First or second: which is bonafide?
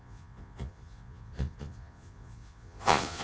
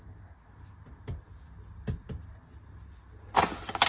second